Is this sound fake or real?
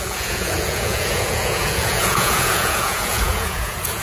fake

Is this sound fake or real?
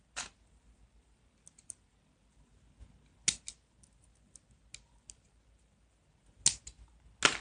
real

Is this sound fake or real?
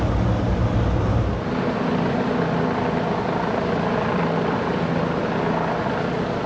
real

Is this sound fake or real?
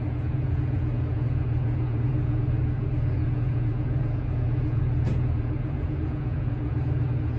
fake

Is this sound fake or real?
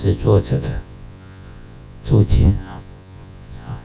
fake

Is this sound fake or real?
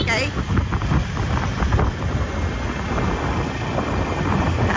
real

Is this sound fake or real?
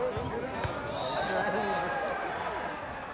real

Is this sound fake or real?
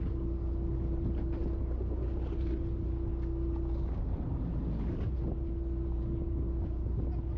real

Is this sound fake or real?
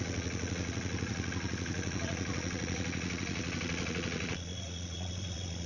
fake